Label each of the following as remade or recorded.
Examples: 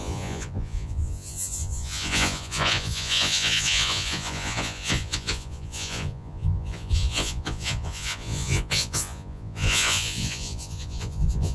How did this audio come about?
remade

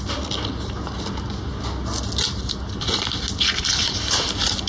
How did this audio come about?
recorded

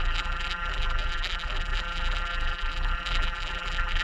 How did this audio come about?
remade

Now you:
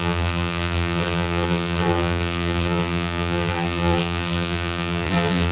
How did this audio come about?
remade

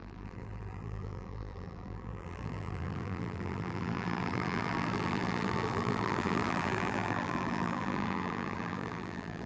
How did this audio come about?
remade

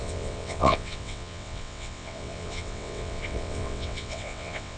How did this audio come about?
remade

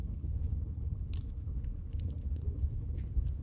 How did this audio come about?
remade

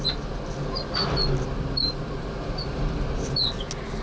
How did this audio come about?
recorded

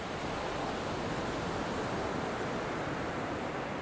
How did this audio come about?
recorded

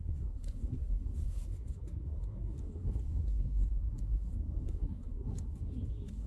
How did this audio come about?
remade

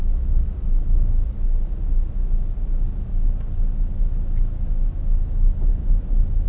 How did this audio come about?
recorded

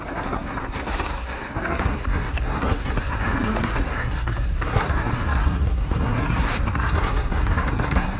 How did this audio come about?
remade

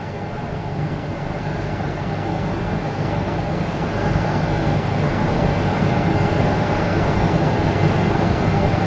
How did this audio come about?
remade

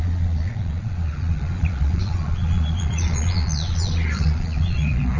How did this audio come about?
remade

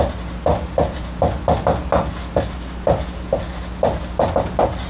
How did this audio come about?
recorded